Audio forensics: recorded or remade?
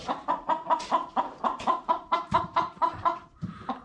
remade